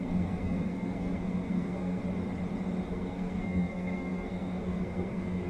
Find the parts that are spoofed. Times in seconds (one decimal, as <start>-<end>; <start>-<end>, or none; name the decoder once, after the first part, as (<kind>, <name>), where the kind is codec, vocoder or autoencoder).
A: 0.0-2.0 (codec, SNAC); 2.9-5.5